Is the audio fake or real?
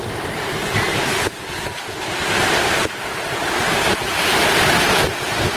real